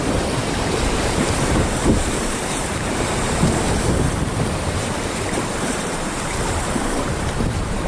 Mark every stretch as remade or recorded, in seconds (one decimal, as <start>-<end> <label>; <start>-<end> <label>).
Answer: 0.0-7.9 remade